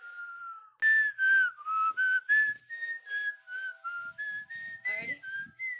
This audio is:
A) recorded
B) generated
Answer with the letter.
A